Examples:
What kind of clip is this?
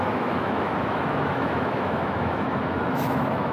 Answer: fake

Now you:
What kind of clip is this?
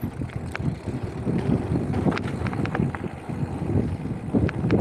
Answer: real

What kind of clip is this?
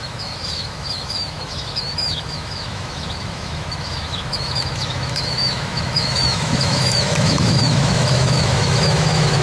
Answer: fake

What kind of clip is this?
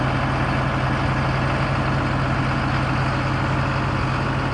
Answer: real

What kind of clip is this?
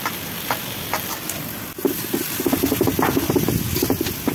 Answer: real